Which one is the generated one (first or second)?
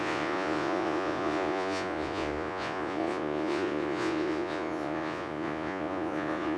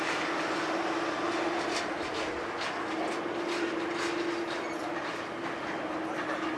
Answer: first